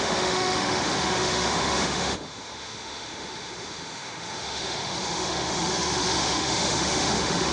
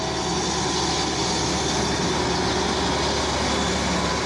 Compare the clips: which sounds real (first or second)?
second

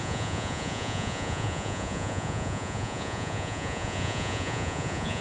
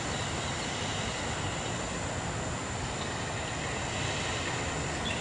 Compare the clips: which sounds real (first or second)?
second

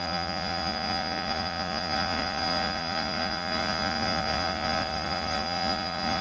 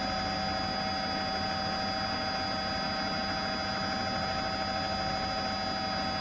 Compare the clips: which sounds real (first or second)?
second